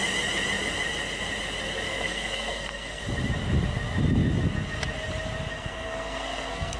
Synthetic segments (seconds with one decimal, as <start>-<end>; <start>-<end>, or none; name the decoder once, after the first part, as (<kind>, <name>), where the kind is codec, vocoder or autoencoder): 1.9-3.0 (codec, SNAC); 5.5-6.8